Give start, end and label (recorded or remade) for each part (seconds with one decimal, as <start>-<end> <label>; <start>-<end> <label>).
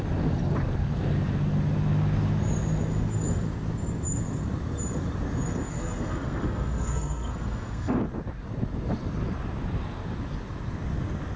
0.0-5.7 recorded; 5.7-8.0 remade; 8.0-11.4 recorded